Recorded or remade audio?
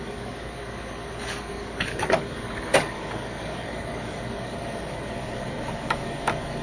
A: remade